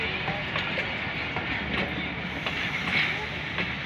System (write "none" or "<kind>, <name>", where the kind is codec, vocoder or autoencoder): none